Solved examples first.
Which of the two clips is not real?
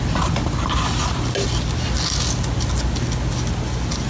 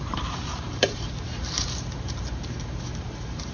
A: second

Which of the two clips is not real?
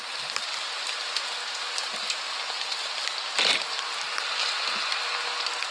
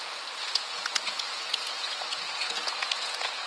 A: second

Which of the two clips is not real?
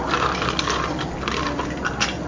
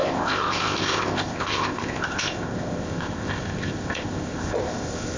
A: second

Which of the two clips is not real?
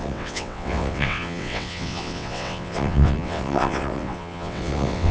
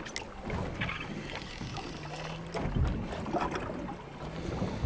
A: first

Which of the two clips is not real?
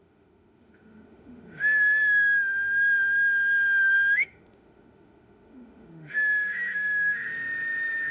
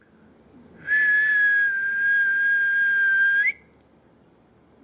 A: first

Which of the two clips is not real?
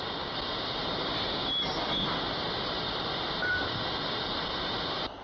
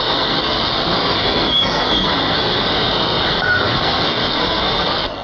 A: second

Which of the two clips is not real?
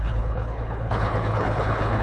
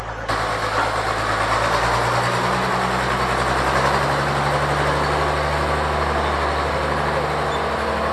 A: first